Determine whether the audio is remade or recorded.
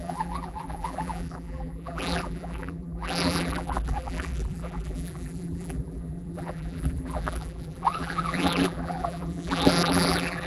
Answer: remade